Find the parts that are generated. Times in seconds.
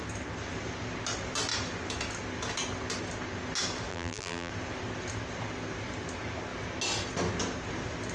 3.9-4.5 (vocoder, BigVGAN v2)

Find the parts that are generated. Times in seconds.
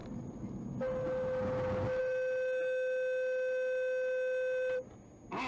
0.0-0.6 (vocoder, BigVGAN v2)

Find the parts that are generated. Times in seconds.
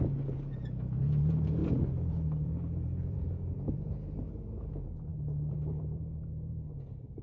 0.0-7.2 (vocoder, Vocos)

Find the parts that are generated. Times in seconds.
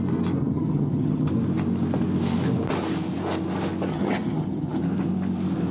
0.4-1.3 (vocoder, HiFi-GAN); 3.9-4.8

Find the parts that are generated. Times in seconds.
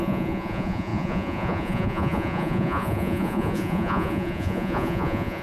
0.0-5.4 (vocoder, Vocos)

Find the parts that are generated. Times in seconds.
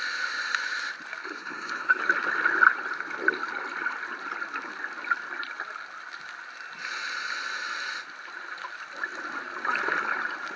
1.2-2.0 (codec, SNAC)